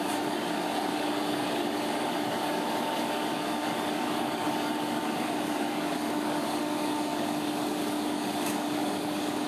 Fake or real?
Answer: fake